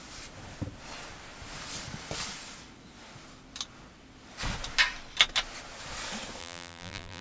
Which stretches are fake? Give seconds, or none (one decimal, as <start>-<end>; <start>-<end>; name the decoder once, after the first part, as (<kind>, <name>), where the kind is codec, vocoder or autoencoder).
6.4-7.2 (vocoder, BigVGAN v2)